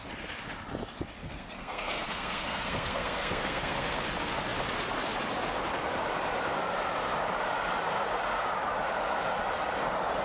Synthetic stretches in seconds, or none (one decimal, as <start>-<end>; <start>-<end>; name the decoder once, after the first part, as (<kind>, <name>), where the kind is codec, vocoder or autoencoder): 1.2-4.0 (codec, SNAC)